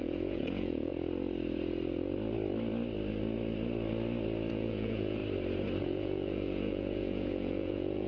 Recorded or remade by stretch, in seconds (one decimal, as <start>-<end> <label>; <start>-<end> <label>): 0.0-0.9 remade; 0.9-4.5 recorded; 4.5-5.2 remade; 5.2-5.8 recorded; 5.8-8.1 remade